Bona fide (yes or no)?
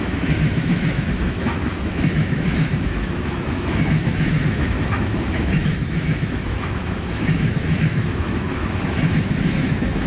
no